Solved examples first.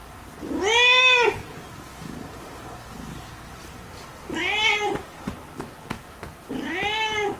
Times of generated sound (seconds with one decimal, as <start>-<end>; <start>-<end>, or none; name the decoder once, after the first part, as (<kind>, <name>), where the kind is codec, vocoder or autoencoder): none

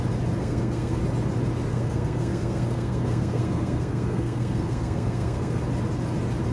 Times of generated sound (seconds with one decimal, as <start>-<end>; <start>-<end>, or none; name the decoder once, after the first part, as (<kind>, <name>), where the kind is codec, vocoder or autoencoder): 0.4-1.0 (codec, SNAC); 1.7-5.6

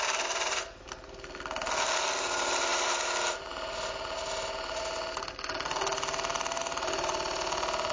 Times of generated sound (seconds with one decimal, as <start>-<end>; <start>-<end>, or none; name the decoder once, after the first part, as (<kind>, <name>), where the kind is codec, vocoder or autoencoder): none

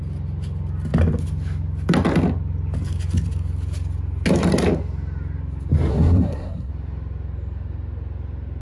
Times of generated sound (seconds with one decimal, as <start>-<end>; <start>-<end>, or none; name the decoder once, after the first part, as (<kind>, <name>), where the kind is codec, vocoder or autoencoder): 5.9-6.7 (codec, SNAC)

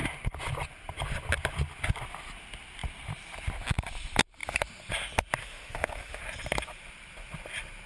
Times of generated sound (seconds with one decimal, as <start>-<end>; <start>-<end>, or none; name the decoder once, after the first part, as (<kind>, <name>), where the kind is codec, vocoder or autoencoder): 5.4-6.2 (autoencoder, DAC-VAE)